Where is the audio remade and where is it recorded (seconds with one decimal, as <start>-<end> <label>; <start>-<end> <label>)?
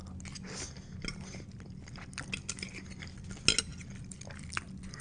0.0-3.7 recorded; 3.7-4.4 remade; 4.4-5.0 recorded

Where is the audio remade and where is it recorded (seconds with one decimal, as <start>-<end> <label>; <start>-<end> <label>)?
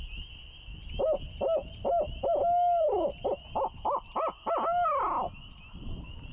0.0-6.3 recorded